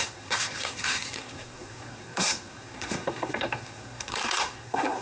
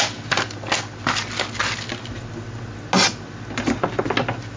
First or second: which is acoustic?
second